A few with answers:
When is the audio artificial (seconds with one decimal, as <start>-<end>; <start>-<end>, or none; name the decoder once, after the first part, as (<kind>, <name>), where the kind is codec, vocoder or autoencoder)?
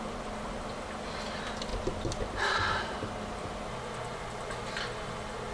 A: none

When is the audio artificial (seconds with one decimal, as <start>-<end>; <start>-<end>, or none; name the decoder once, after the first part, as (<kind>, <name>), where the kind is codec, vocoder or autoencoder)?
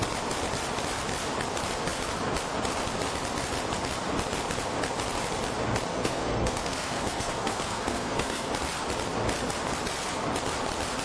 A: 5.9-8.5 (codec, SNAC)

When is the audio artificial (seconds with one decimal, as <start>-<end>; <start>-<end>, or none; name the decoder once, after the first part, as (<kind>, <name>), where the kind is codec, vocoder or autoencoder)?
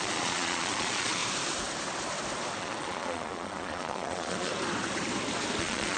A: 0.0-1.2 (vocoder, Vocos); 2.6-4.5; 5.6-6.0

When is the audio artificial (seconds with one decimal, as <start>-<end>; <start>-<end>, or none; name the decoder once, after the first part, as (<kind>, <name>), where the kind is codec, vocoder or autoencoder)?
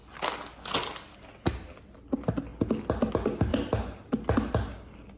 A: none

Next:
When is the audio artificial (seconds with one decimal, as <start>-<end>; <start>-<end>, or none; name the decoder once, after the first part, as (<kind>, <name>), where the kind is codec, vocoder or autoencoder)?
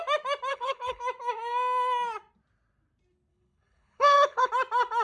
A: 0.5-1.0 (codec, HILCodec); 3.3-4.5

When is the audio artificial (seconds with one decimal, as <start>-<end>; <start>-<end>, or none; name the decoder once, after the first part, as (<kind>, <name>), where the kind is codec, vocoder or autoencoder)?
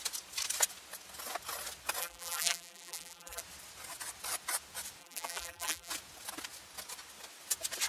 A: 2.0-3.4 (vocoder, BigVGAN v2); 5.0-5.9